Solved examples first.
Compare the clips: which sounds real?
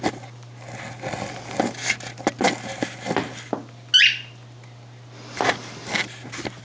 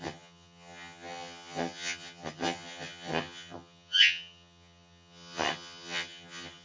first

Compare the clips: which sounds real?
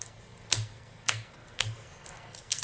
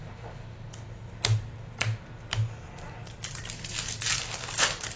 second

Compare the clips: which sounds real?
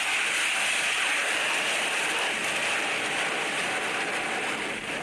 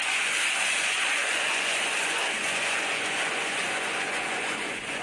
first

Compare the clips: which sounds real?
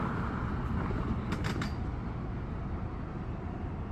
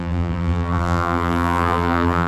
first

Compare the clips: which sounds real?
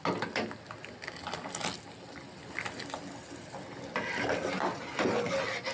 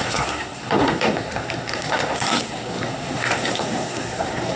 first